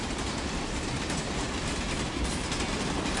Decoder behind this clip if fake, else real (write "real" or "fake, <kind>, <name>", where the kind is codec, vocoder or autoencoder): real